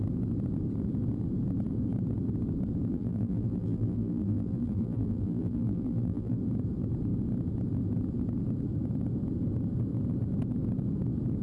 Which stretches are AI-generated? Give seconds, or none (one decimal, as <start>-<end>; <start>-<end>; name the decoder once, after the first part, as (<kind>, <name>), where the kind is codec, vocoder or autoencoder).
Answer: 2.9-6.4 (vocoder, BigVGAN v2)